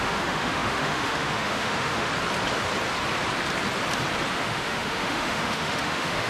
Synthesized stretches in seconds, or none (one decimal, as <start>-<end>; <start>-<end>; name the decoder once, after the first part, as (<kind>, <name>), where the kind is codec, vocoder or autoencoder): 0.0-2.1 (autoencoder, DAC-VAE); 4.3-6.3